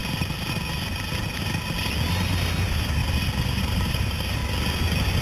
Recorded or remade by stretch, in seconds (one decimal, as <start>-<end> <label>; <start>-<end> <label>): 0.0-2.1 recorded; 2.1-3.0 remade; 3.0-3.6 recorded; 3.6-4.4 remade; 4.4-5.2 recorded